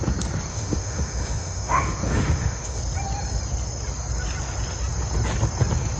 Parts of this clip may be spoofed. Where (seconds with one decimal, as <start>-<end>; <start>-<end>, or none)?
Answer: 0.5-2.8